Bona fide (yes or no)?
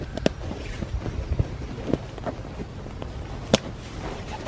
yes